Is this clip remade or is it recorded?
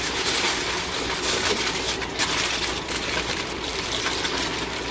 recorded